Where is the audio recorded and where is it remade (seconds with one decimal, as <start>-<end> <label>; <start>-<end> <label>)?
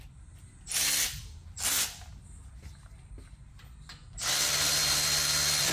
0.0-5.7 recorded